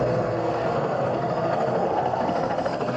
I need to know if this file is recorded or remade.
remade